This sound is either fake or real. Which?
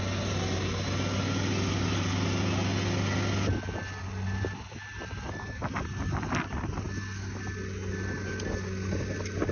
real